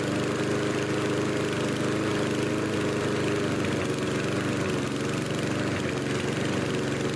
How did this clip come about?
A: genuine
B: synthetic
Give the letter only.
A